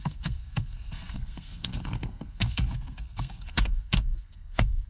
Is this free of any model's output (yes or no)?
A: no